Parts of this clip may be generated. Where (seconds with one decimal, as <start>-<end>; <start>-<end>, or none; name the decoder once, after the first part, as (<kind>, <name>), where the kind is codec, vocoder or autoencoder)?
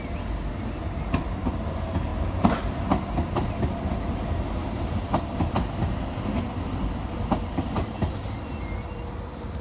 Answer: none